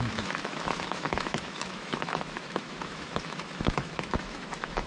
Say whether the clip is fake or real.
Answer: fake